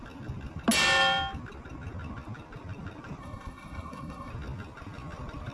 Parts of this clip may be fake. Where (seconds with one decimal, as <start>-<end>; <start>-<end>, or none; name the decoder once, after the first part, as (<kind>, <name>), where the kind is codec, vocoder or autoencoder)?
3.2-4.3 (codec, SNAC)